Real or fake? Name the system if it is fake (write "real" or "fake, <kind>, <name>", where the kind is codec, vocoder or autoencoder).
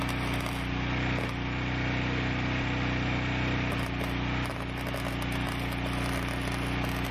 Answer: real